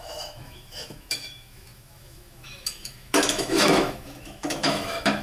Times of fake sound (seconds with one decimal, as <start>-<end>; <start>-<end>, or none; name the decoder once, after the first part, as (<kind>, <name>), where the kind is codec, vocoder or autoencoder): 0.0-5.2 (autoencoder, DAC-VAE)